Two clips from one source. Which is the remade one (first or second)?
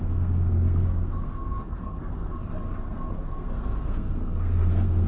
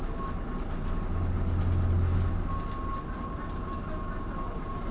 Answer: first